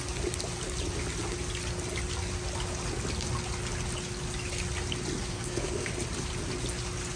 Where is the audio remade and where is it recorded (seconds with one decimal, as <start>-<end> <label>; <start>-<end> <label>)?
0.0-5.3 recorded; 5.3-5.9 remade; 5.9-7.2 recorded